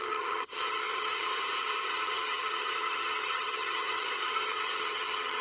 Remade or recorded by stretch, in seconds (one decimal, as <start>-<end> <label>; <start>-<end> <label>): 0.0-1.3 remade; 1.3-1.9 recorded; 1.9-5.4 remade